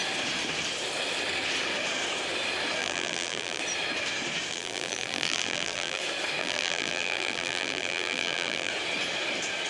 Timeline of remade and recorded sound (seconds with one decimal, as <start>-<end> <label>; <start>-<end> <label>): 0.0-2.8 recorded; 2.8-3.6 remade; 3.6-4.5 recorded; 4.5-6.0 remade; 6.0-6.4 recorded; 6.4-8.7 remade; 8.7-9.7 recorded